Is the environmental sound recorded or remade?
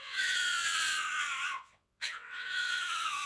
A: remade